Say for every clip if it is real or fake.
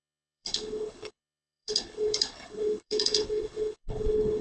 fake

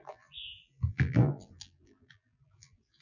fake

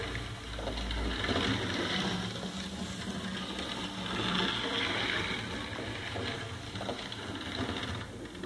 real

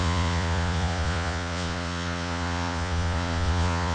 fake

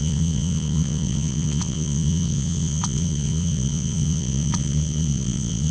fake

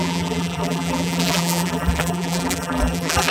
fake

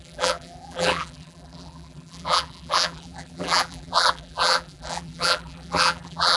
fake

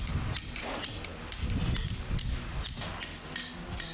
real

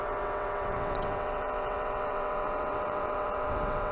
fake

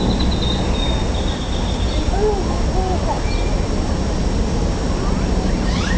real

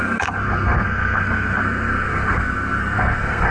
fake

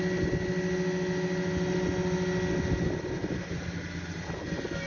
real